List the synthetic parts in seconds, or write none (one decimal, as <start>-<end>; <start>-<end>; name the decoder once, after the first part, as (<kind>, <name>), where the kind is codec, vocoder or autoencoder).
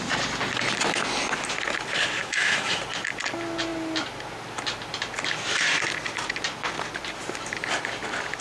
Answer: 2.2-2.8 (autoencoder, DAC-VAE)